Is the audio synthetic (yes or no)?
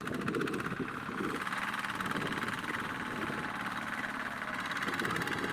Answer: no